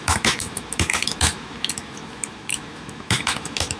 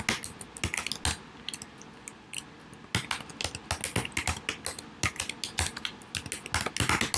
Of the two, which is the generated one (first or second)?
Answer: first